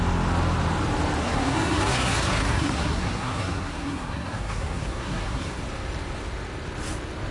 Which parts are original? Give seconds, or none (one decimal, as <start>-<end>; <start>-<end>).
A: 0.0-1.2; 5.6-7.3